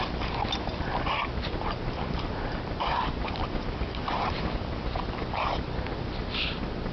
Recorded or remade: recorded